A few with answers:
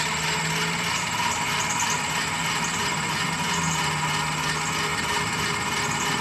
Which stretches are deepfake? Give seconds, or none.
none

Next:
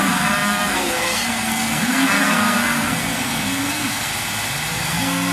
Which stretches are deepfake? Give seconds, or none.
0.0-4.1 (codec, SNAC); 4.7-5.3